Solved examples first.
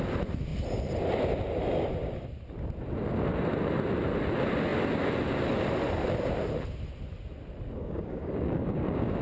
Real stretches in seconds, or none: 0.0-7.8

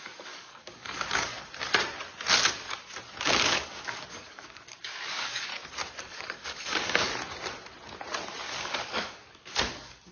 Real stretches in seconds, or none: 1.3-3.3; 5.5-6.0; 7.1-8.5

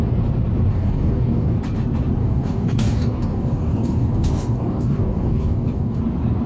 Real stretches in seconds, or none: 0.0-0.7; 1.6-2.2; 6.0-6.5

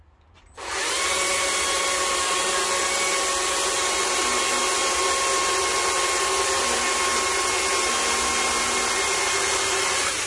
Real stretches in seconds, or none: 0.0-10.3